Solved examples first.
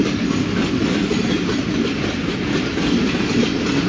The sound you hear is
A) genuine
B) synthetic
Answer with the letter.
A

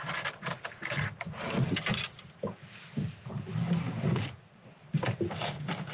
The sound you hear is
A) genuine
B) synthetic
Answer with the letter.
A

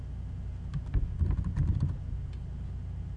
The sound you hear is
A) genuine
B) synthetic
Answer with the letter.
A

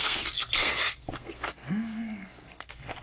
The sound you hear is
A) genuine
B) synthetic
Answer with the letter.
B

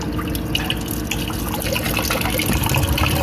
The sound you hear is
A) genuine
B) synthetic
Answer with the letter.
A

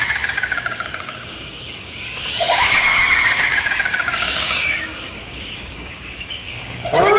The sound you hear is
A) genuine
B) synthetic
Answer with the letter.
B